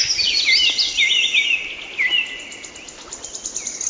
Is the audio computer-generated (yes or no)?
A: no